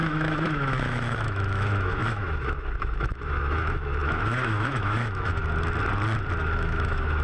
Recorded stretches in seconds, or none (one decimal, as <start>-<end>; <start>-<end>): 5.4-6.4